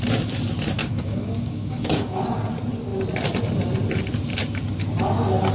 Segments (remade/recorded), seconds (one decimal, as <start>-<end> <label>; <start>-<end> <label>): 0.0-0.8 recorded; 0.8-2.2 remade; 2.2-5.5 recorded